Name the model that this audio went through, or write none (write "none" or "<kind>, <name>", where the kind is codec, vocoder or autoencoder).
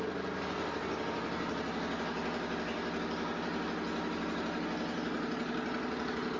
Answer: none